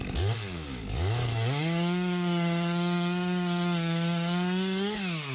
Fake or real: fake